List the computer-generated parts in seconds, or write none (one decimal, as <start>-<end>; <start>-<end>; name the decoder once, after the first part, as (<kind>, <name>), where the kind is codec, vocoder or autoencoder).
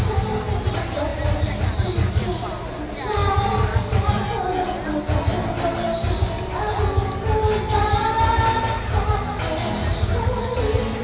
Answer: none